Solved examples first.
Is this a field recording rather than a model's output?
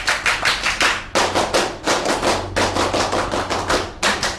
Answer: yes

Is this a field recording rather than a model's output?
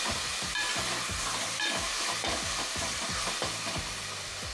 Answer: no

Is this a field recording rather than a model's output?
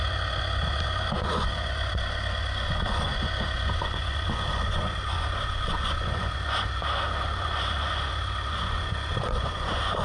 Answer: no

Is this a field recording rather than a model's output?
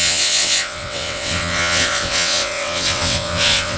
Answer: no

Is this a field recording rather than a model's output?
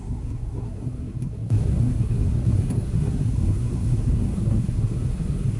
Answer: no